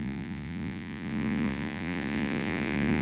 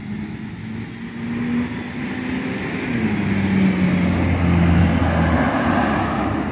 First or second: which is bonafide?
second